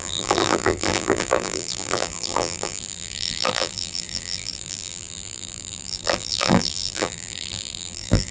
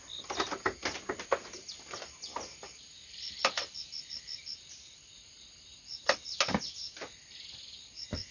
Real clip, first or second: second